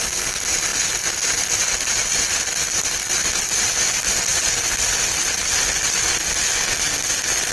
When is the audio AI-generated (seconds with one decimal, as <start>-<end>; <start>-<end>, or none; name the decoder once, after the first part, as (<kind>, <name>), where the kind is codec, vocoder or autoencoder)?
none